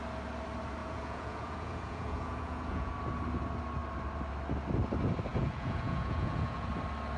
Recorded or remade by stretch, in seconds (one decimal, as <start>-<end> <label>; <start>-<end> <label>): 0.0-0.8 recorded; 0.8-2.9 remade; 2.9-5.3 recorded; 5.3-6.7 remade; 6.7-7.2 recorded